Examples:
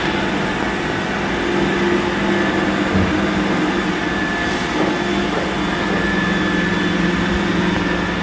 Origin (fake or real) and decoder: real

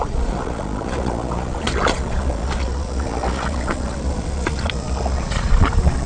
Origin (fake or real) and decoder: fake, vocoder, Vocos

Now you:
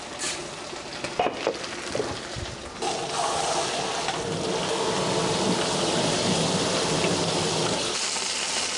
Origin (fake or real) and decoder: real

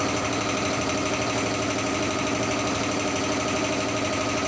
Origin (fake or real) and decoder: real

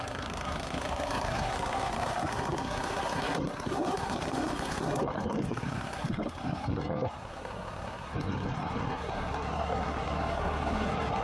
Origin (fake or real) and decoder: fake, codec, SNAC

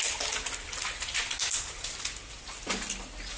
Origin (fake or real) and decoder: real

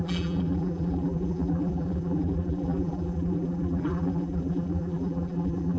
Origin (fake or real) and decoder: fake, vocoder, BigVGAN v2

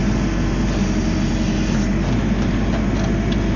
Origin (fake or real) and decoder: real